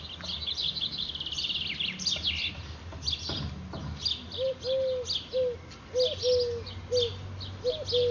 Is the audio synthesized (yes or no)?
no